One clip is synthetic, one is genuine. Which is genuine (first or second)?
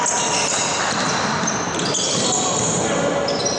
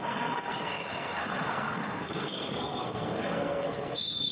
first